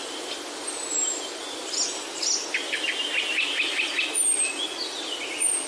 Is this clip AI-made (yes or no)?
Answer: no